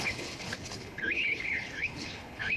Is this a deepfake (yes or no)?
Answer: yes